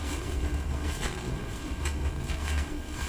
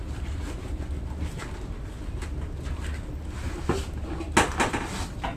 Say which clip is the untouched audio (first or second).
second